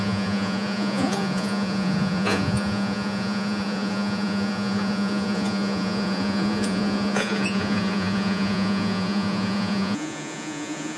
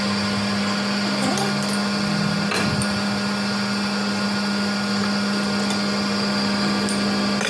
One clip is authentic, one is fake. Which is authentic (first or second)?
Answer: second